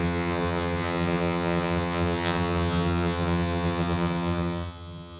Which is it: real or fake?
fake